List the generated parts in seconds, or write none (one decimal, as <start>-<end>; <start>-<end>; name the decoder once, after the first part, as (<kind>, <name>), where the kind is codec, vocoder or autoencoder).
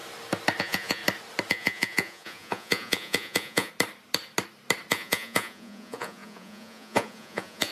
0.6-1.0 (vocoder, Vocos); 1.5-3.7; 4.9-7.7